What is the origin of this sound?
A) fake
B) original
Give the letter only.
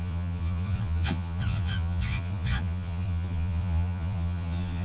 A